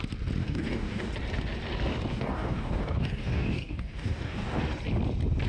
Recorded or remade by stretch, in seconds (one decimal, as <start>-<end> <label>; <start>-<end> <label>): 0.0-0.4 recorded; 0.4-1.1 remade; 1.1-2.1 recorded; 2.1-4.6 remade; 4.6-5.5 recorded